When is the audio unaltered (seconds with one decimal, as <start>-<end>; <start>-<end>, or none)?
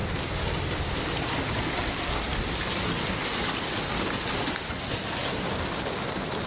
0.0-5.2; 5.8-6.5